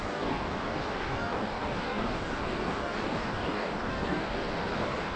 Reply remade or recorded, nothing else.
remade